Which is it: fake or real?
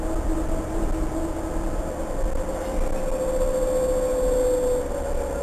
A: real